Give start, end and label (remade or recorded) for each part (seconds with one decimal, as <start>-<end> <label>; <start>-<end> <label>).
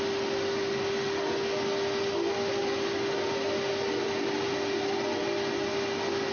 0.0-6.3 recorded